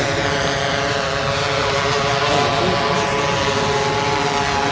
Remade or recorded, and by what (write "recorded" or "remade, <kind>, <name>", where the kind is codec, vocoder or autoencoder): recorded